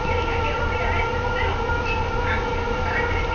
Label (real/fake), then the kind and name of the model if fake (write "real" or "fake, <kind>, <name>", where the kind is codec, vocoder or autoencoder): real